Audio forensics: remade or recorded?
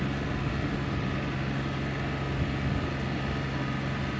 recorded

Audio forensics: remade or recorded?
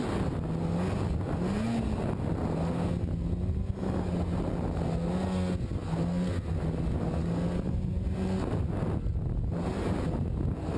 recorded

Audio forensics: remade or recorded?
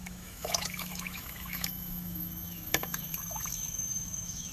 remade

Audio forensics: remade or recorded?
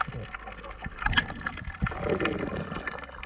recorded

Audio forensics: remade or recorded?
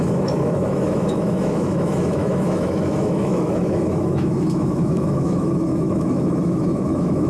remade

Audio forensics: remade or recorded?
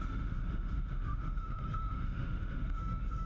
remade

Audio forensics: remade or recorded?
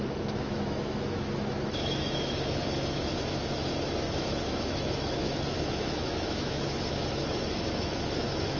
remade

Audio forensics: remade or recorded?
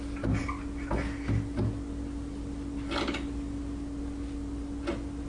recorded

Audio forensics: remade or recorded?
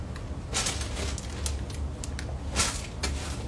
recorded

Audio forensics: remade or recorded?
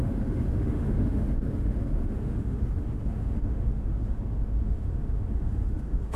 remade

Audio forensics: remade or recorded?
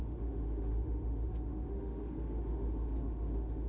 remade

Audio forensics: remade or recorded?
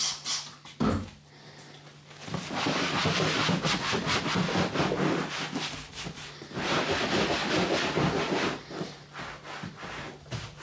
recorded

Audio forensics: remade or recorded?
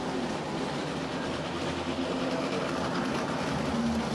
recorded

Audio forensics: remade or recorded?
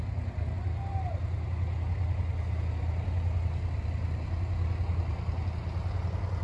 recorded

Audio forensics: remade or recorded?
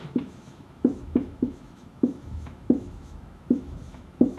remade